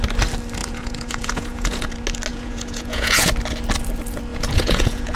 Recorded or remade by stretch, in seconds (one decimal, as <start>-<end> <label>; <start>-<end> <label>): 0.0-0.6 recorded; 0.6-1.9 remade; 1.9-2.3 recorded; 2.3-3.3 remade; 3.3-4.3 recorded; 4.3-5.2 remade